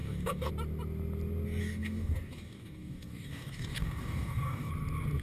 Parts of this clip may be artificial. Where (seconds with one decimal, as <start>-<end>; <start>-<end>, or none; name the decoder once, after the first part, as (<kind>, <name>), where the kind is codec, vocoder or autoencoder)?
0.0-0.5 (codec, DAC); 1.6-4.7